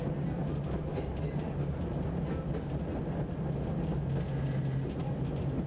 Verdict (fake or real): real